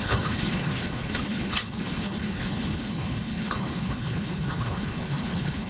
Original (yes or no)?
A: no